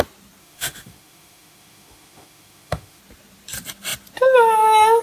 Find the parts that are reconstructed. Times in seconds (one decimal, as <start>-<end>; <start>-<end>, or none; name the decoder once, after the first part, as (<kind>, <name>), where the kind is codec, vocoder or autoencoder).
0.4-3.0 (autoencoder, DAC-VAE)